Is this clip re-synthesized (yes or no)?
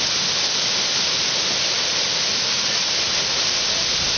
no